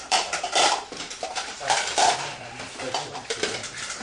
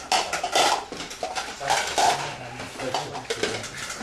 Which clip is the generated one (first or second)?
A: first